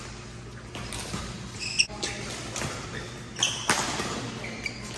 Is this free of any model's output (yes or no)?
yes